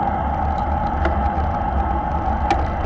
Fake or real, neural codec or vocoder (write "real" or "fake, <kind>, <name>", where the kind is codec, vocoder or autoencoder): real